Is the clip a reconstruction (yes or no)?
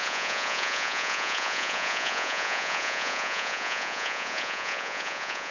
yes